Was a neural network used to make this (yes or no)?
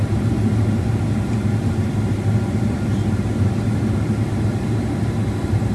yes